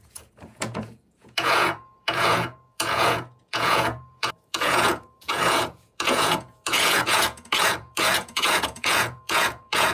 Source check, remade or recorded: remade